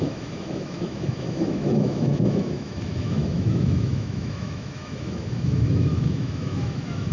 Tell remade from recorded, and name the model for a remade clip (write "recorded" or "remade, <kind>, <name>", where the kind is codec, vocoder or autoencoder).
remade, autoencoder, DAC-VAE